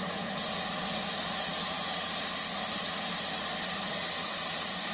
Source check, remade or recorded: recorded